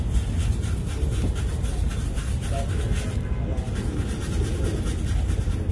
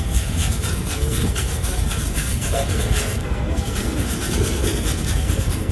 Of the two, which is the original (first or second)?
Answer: first